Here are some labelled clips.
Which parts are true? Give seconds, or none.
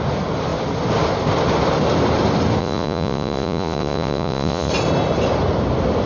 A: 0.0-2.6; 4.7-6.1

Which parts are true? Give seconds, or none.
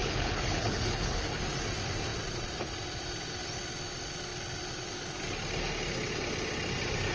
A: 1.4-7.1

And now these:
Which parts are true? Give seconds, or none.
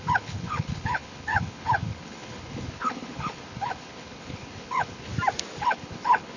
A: 5.1-5.6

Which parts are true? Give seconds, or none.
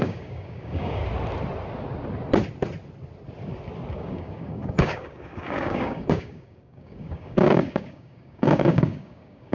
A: 1.0-3.9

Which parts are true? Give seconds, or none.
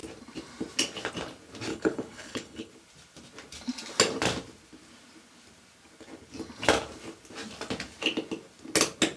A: 0.0-1.7; 2.7-9.2